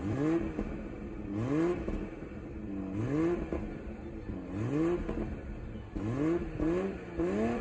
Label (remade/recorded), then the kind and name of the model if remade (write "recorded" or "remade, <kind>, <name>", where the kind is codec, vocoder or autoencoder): recorded